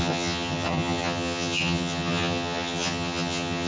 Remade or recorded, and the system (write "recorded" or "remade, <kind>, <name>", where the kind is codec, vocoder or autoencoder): remade, vocoder, HiFi-GAN